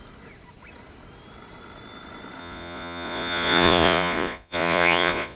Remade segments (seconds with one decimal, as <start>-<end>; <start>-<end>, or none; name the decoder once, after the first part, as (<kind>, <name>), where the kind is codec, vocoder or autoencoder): 2.4-5.4 (vocoder, Vocos)